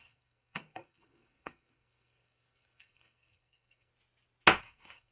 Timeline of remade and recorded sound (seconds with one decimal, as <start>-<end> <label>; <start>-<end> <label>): 0.0-3.9 remade; 3.9-4.6 recorded; 4.6-5.1 remade